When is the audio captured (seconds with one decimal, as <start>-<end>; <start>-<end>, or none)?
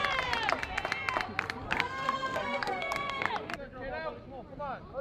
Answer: 0.0-1.6; 3.3-5.0